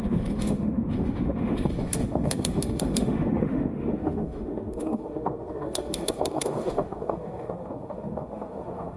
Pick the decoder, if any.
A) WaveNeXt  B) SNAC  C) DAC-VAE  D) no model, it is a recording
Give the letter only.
C